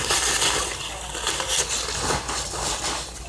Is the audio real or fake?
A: real